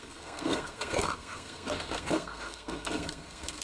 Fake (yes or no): yes